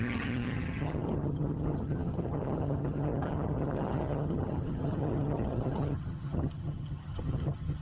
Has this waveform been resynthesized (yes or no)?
yes